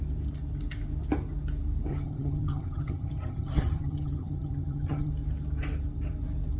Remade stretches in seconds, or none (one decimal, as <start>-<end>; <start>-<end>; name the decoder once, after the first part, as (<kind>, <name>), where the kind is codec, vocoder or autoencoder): 1.9-5.1 (vocoder, HiFi-GAN)